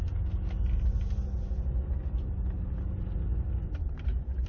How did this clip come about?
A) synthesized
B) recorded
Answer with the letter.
B